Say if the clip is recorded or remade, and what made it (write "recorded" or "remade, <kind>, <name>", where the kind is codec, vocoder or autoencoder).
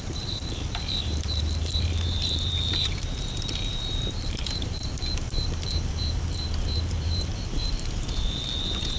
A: remade, vocoder, BigVGAN v2